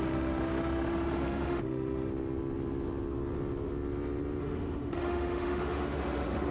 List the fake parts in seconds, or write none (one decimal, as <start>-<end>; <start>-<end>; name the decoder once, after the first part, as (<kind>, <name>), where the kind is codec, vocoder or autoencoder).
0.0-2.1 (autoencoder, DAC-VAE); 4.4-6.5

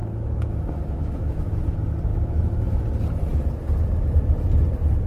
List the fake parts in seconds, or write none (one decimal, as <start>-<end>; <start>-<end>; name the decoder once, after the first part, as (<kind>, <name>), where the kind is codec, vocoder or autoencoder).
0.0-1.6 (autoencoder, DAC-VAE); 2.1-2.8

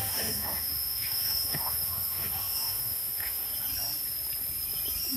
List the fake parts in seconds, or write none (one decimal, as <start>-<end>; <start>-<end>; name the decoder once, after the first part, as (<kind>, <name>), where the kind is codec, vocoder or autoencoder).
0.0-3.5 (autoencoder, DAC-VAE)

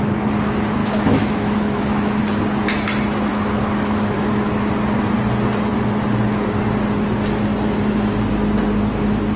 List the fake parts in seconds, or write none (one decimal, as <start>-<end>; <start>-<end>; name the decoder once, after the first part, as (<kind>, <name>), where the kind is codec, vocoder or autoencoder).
0.8-2.2 (autoencoder, DAC-VAE); 3.3-4.7

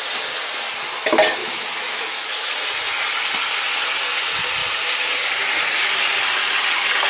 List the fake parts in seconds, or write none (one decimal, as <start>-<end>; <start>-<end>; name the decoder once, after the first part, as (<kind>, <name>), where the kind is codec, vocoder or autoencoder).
1.4-2.5 (autoencoder, DAC-VAE)

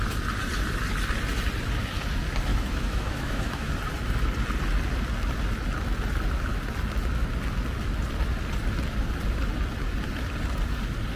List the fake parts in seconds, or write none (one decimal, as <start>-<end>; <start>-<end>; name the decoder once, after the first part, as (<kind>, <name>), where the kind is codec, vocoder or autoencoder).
2.5-3.7 (autoencoder, DAC-VAE)